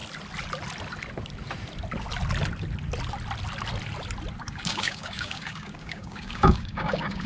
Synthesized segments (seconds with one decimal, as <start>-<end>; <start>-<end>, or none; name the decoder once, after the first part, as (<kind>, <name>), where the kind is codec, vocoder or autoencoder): 4.4-7.3 (codec, DAC)